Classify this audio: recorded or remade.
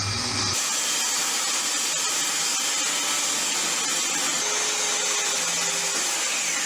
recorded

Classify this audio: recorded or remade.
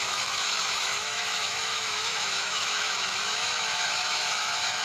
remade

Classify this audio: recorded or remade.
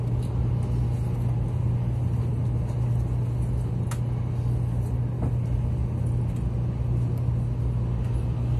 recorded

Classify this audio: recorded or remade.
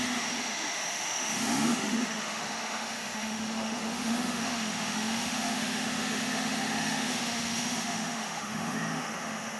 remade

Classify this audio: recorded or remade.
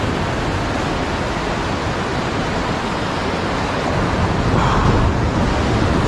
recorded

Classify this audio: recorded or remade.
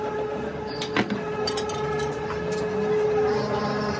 recorded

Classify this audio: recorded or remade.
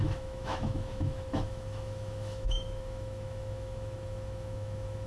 remade